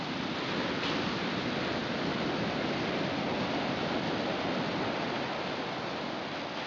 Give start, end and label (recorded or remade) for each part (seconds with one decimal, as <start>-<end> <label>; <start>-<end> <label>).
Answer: 0.0-6.7 recorded